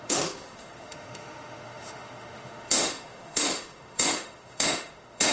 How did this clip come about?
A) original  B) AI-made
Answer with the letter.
B